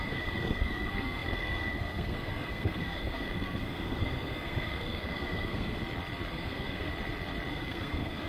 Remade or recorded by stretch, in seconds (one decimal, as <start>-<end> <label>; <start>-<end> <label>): 0.0-5.8 remade; 5.8-6.3 recorded; 6.3-6.9 remade; 6.9-7.5 recorded; 7.5-8.3 remade